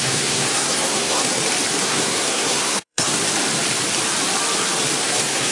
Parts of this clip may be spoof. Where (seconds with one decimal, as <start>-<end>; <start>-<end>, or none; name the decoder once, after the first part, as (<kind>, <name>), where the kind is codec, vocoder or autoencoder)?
0.0-1.3 (codec, SNAC); 1.8-3.2; 5.0-5.5